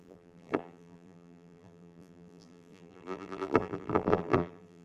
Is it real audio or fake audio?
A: fake